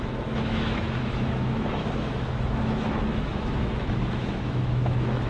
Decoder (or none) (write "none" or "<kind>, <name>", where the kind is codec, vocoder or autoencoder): autoencoder, DAC-VAE